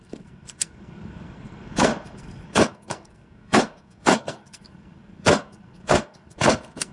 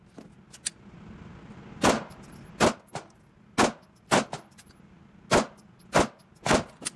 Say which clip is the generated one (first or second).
first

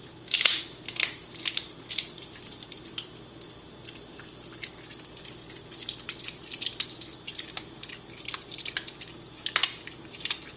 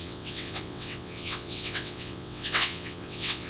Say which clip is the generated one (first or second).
second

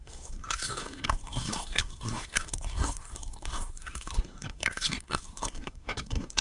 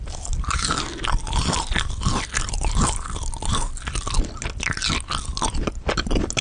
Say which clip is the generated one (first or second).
first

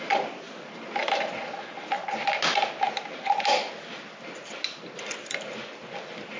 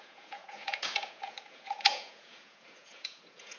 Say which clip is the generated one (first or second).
second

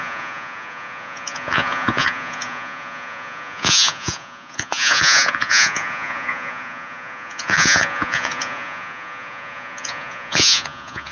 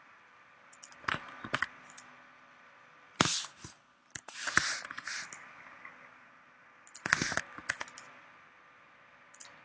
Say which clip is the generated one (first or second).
first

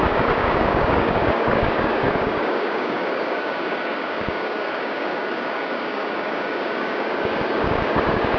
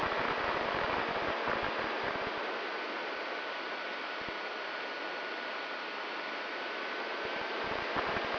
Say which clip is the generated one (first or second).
first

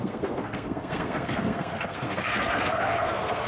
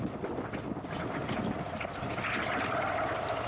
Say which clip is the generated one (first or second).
first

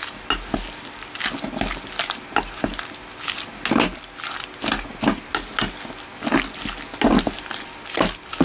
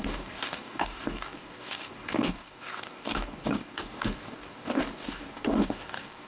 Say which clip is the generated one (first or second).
second